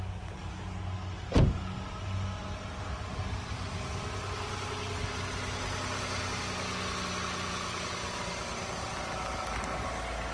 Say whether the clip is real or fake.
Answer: real